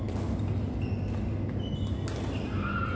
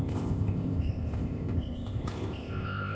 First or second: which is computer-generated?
second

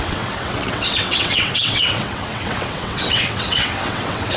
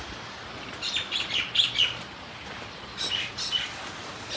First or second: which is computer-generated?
first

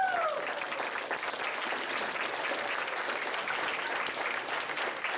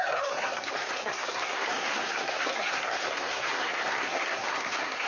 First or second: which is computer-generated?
second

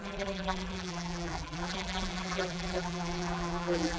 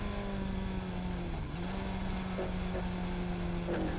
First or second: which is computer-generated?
first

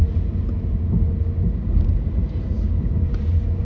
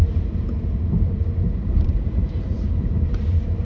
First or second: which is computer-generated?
second